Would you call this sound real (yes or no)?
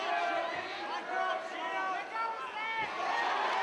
yes